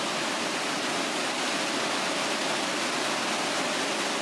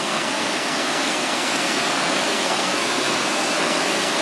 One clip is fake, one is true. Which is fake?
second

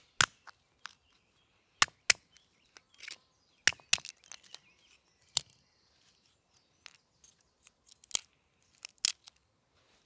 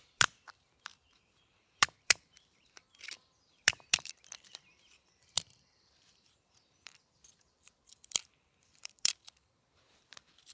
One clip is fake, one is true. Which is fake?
second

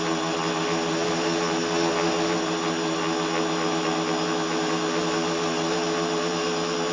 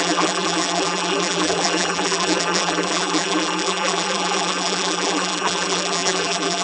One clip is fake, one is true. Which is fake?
second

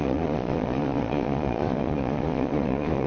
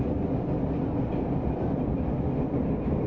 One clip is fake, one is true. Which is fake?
first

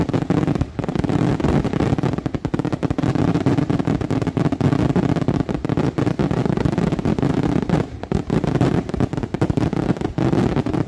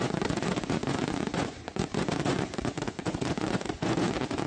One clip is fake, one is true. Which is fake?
second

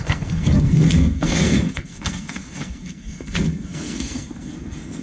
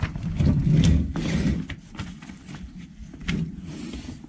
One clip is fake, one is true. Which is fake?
first